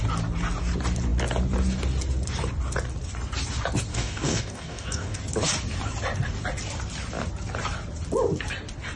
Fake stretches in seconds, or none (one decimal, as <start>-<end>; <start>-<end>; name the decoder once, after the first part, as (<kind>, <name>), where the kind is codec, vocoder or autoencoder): 3.9-5.2 (codec, DAC)